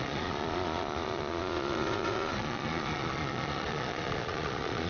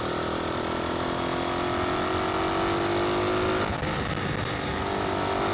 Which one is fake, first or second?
first